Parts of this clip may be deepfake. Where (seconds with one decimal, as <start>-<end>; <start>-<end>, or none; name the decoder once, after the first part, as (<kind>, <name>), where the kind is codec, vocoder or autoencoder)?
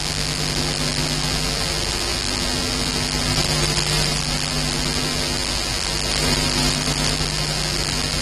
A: 3.3-4.2 (autoencoder, DAC-VAE); 6.1-7.1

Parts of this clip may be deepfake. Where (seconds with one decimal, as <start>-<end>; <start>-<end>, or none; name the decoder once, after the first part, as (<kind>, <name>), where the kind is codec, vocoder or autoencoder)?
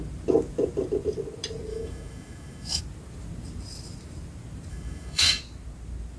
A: 1.7-2.8 (autoencoder, DAC-VAE); 4.7-5.4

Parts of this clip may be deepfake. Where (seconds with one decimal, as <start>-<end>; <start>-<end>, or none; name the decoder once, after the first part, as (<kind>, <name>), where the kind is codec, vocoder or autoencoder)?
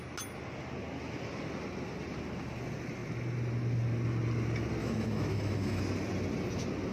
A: 4.8-5.8 (autoencoder, DAC-VAE)